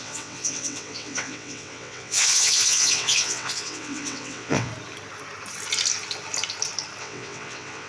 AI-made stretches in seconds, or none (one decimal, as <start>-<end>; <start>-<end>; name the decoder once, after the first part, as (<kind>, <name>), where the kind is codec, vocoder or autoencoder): 0.0-4.7 (vocoder, WaveNeXt); 7.0-7.9